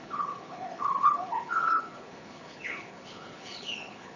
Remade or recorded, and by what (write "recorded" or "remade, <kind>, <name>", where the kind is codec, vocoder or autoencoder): remade, codec, HILCodec